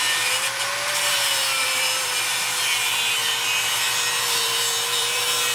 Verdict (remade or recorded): remade